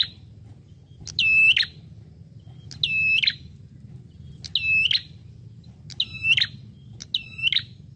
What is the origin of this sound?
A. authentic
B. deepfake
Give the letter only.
A